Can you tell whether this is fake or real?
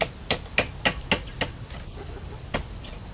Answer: real